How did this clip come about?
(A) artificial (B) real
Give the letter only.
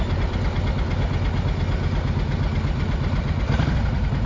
B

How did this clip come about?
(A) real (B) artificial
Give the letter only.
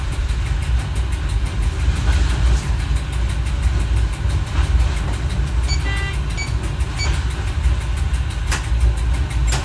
A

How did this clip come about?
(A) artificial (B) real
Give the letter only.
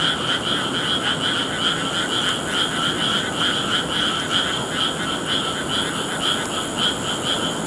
B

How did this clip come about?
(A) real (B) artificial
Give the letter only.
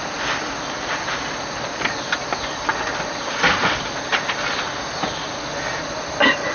A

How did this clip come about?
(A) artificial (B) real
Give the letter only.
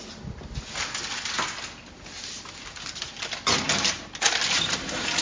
B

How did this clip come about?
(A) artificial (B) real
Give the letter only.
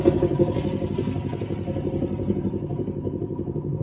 B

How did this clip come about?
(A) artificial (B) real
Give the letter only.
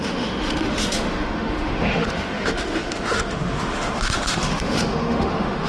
A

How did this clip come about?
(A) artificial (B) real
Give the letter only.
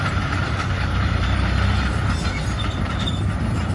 A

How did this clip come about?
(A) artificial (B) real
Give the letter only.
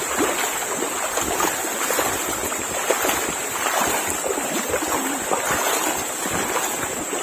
B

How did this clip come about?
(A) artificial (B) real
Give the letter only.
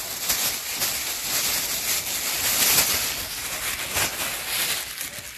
B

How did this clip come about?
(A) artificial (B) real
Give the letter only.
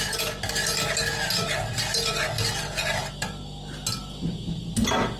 B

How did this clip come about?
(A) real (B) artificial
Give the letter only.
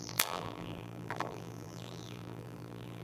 B